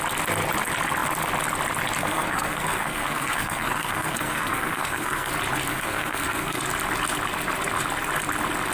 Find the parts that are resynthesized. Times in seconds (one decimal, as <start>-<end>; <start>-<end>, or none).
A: 2.0-5.3; 5.7-6.6